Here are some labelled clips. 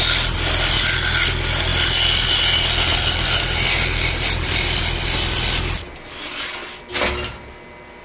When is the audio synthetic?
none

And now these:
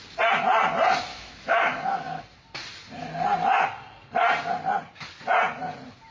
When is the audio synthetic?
1.1-2.2 (autoencoder, DAC-VAE)

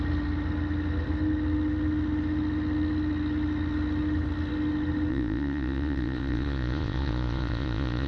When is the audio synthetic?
5.1-8.1 (vocoder, Vocos)

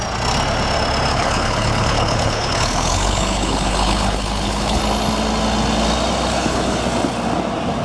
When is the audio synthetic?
1.1-4.8 (codec, HILCodec); 6.3-6.8

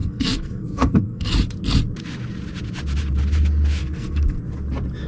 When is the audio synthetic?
0.0-1.3 (codec, SNAC); 3.8-4.4

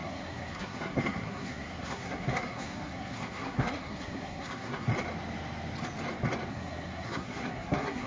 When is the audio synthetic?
0.0-4.9 (codec, SNAC); 6.5-8.1

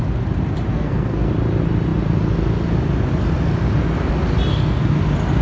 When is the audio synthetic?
0.7-1.3 (codec, SNAC); 4.5-5.0

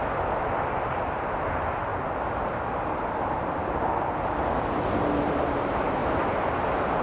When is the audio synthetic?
0.9-1.9 (vocoder, BigVGAN v2); 5.6-6.0